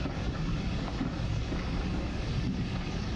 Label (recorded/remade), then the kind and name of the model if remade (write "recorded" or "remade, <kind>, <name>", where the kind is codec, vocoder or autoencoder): remade, codec, DAC